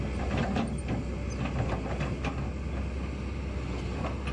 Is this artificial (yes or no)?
no